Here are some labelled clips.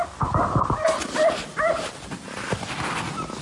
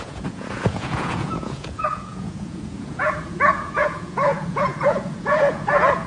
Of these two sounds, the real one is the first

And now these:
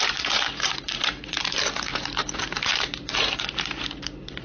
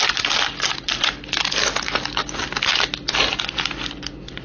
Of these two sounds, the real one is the second